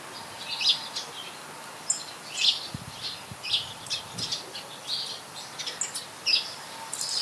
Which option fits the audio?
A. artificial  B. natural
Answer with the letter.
B